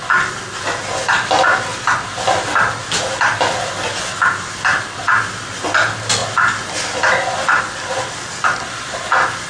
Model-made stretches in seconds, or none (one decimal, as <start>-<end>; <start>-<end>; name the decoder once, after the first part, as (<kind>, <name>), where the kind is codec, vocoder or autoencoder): none